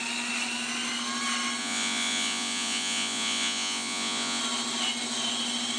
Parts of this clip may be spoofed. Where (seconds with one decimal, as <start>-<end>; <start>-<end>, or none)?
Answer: 1.6-4.4